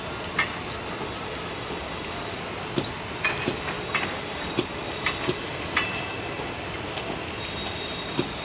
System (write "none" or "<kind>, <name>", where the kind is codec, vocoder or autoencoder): none